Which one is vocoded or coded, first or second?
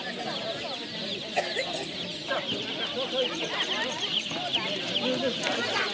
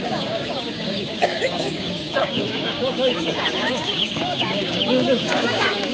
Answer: second